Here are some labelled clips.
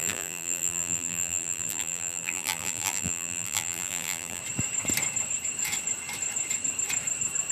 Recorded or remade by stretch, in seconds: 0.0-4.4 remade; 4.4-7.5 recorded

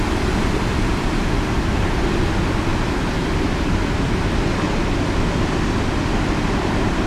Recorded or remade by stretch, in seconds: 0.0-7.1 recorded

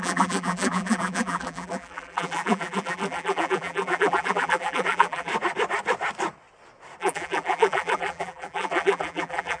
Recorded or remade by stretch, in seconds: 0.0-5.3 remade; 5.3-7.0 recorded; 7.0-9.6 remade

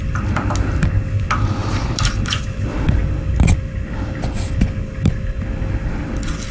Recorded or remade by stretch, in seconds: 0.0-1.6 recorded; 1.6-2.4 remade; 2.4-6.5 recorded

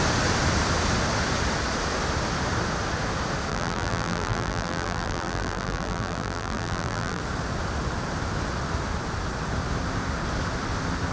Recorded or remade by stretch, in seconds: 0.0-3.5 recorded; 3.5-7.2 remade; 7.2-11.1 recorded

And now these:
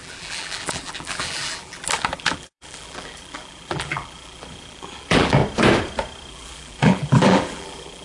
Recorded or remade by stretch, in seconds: 0.0-5.4 remade; 5.4-6.3 recorded; 6.3-8.0 remade

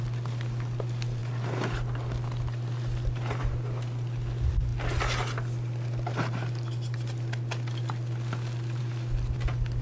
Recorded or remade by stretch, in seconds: 0.0-9.8 recorded